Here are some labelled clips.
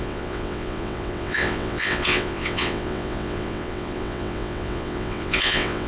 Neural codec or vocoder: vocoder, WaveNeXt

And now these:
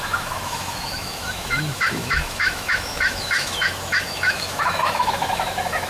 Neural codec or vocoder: autoencoder, DAC-VAE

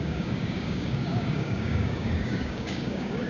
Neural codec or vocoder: codec, DAC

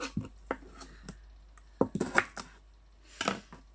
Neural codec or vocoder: none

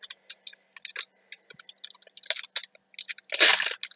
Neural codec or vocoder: none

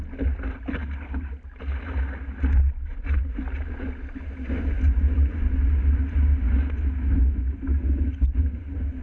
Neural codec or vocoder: none